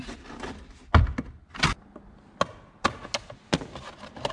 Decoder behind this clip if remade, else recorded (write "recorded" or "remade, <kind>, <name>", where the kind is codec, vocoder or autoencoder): recorded